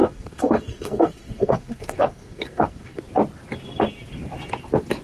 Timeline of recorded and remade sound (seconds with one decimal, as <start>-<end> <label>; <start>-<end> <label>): 0.0-3.0 remade; 3.0-5.0 recorded